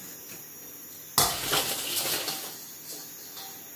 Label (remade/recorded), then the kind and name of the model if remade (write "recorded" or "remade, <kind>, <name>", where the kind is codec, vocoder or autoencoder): recorded